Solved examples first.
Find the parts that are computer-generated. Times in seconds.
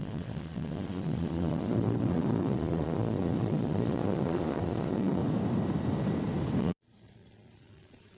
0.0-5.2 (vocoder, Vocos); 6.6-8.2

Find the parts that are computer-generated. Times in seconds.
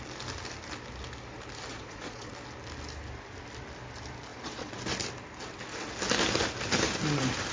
1.7-2.3 (vocoder, Vocos); 4.3-4.8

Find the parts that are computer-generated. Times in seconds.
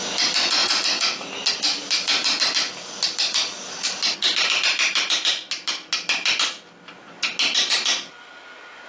0.6-1.3 (vocoder, Vocos)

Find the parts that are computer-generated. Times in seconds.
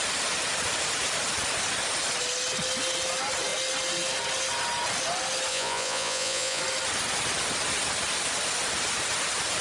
5.5-6.6 (vocoder, Vocos)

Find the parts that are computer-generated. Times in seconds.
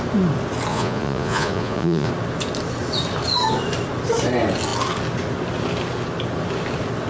0.7-2.1 (vocoder, Vocos)